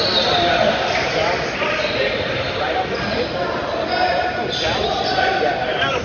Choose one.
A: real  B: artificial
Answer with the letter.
A